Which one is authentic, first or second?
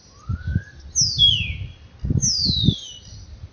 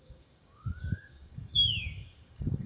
first